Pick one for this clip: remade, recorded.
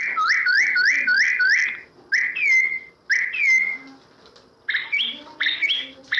recorded